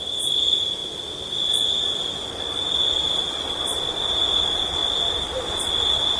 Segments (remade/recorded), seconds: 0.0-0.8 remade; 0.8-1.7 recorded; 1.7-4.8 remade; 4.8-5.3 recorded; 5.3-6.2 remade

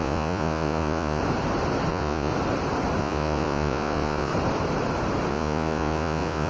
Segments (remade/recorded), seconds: 0.0-1.2 remade; 1.2-1.9 recorded; 1.9-2.3 remade; 2.3-3.0 recorded; 3.0-4.3 remade; 4.3-5.3 recorded; 5.3-6.5 remade

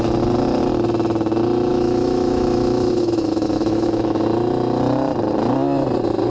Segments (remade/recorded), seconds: 0.0-1.7 recorded; 1.7-4.2 remade; 4.2-6.3 recorded

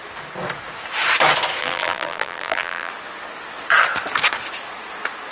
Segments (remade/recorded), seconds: 0.0-1.6 recorded; 1.6-2.9 remade; 2.9-5.3 recorded

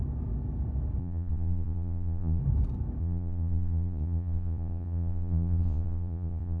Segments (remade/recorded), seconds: 0.0-1.0 recorded; 1.0-2.4 remade; 2.4-3.0 recorded; 3.0-6.6 remade